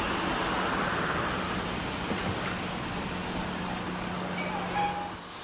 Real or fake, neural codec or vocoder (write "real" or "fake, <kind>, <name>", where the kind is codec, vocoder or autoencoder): real